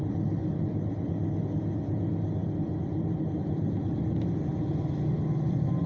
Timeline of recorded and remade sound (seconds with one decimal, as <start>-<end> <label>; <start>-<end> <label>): 0.0-5.9 recorded